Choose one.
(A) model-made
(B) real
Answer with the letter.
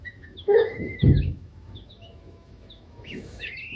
A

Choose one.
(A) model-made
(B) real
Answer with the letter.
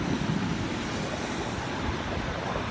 B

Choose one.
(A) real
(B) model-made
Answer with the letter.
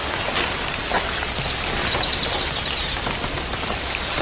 A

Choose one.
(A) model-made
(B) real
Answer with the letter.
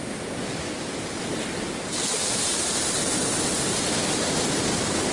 B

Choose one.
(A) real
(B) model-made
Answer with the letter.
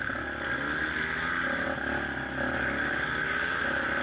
A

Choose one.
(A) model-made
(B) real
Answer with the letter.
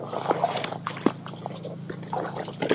B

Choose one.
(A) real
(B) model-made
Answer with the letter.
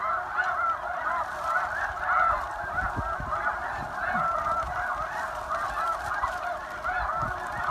A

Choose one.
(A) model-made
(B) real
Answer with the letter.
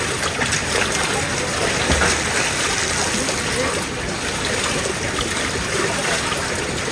B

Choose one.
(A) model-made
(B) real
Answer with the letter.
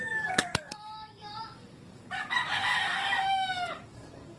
A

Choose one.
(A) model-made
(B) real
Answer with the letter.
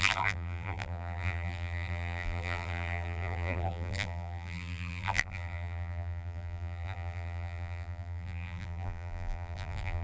A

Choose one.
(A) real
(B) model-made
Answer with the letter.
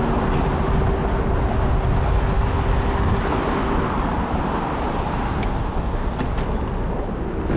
A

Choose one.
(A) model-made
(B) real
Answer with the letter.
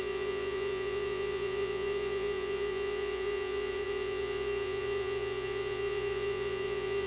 A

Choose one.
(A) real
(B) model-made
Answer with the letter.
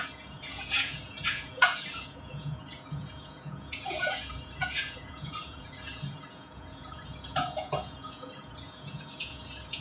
B